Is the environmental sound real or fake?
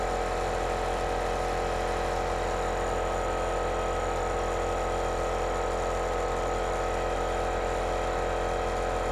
real